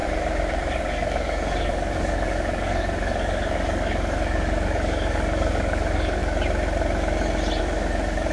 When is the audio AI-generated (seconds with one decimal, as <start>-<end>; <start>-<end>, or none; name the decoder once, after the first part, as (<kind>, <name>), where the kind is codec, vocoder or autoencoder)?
0.5-6.2 (codec, DAC); 7.6-8.3